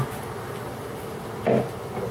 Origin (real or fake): real